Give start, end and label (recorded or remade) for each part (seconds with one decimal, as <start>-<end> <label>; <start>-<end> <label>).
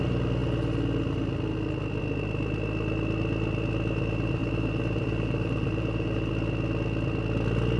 0.0-4.4 recorded; 4.4-6.3 remade; 6.3-7.8 recorded